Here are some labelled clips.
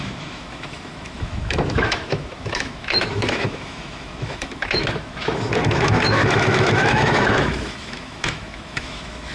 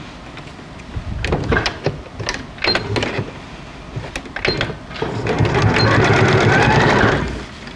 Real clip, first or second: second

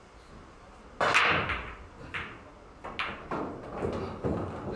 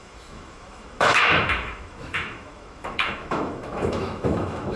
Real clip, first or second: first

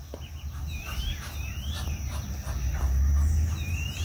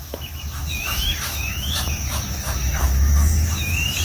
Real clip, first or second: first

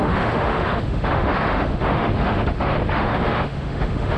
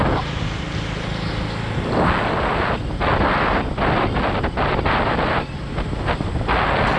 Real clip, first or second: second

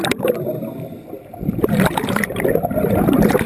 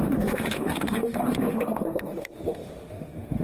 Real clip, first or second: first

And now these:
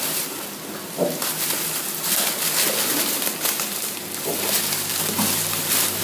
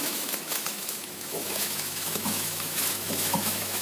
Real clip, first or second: first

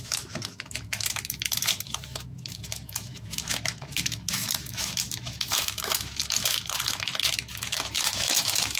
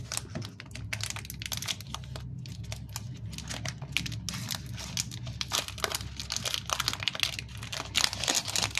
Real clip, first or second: second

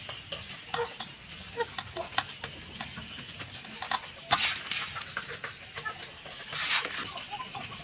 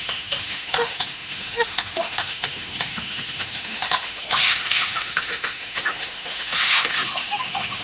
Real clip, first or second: first